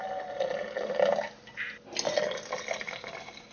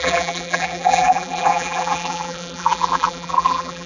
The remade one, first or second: second